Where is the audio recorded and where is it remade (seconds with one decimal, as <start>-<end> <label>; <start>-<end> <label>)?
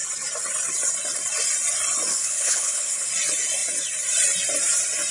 0.0-2.1 recorded; 2.1-3.1 remade; 3.1-5.1 recorded